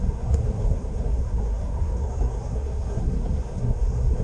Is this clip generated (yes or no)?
yes